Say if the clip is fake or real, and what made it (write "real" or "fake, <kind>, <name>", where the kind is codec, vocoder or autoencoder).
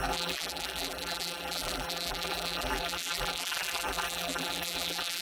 fake, vocoder, BigVGAN v2